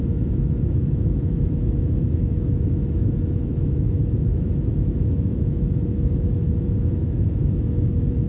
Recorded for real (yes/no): no